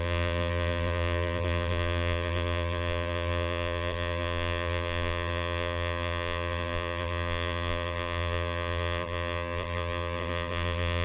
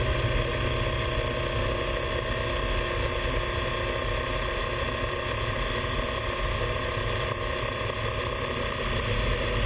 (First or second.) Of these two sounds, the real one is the second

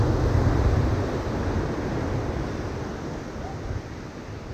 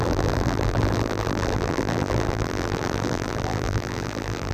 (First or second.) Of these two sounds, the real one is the first